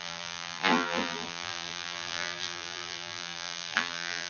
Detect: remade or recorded remade